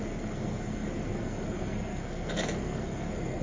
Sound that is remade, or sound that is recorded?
remade